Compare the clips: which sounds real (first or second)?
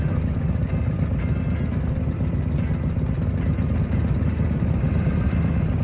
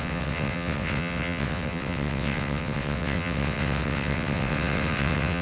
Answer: first